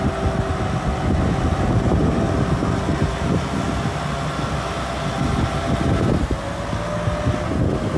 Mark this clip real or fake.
real